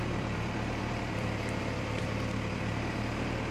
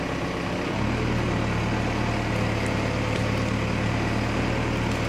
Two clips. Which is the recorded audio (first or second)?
second